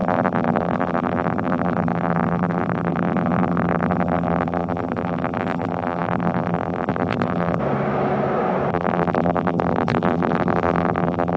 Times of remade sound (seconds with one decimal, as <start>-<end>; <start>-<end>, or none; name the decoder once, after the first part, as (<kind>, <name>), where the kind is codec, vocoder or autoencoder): 0.0-7.6 (vocoder, BigVGAN v2); 8.7-11.4

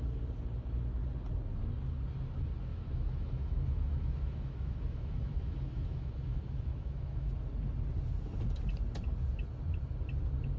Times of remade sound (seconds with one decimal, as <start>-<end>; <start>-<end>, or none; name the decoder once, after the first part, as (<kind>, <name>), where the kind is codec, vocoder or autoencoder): 2.7-7.3 (autoencoder, DAC-VAE)

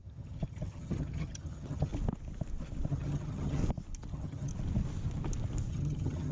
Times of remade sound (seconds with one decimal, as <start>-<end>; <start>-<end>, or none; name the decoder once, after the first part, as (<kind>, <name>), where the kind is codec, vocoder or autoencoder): 0.0-1.9 (vocoder, HiFi-GAN); 2.9-3.6; 4.1-4.5; 5.7-6.3

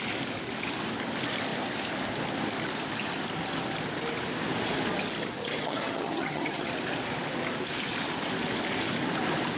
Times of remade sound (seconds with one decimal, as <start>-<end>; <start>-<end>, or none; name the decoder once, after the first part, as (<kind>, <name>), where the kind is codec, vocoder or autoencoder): 5.2-6.7 (vocoder, HiFi-GAN)